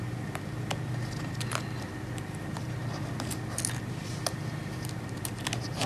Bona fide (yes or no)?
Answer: yes